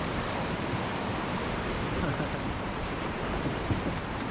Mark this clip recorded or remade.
remade